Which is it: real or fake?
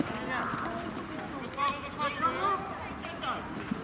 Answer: real